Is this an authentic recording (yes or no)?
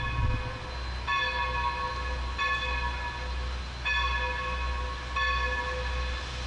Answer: yes